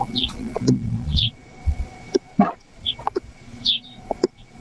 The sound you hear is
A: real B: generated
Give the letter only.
B